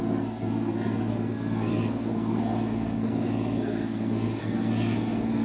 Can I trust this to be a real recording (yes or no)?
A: no